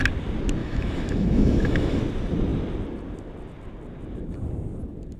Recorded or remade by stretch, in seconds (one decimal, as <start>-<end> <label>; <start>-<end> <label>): 0.0-0.6 recorded; 0.6-2.0 remade; 2.0-5.2 recorded